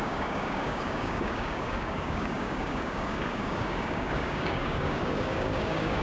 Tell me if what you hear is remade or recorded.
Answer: remade